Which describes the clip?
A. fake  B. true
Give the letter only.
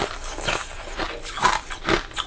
B